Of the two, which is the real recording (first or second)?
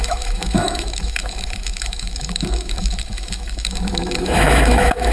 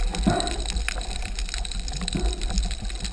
second